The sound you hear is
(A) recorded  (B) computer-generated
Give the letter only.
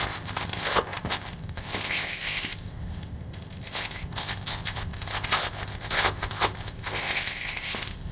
B